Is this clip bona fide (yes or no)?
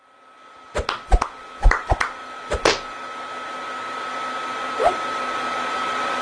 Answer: yes